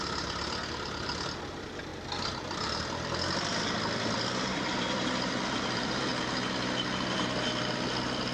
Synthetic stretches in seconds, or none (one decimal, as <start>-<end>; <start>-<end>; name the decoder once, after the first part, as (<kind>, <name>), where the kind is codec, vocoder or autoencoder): 0.0-6.1 (vocoder, BigVGAN v2); 7.7-8.3

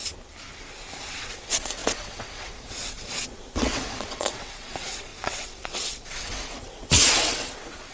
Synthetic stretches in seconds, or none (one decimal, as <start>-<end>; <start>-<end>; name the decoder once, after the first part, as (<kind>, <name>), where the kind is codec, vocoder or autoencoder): 1.0-7.9 (vocoder, WaveNeXt)

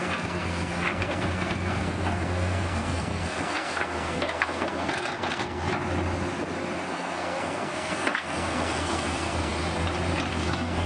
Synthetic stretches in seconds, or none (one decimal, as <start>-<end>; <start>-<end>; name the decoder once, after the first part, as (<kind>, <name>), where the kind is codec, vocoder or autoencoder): 0.0-5.7 (codec, SNAC); 6.9-9.5; 10.3-10.9

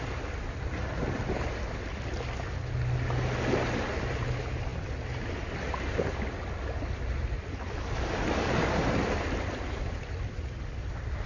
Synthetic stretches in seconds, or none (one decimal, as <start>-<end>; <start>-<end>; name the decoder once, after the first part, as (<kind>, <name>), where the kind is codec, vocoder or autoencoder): none

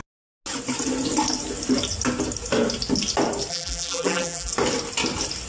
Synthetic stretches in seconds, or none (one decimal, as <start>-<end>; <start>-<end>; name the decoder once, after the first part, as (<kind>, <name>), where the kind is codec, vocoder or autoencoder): 3.5-4.5 (vocoder, BigVGAN v2)

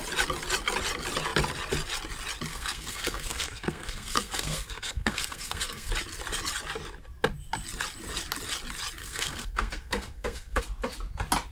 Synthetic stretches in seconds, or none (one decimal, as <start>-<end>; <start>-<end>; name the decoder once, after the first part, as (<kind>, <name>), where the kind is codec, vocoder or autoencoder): 2.5-5.9 (codec, SNAC); 9.0-10.6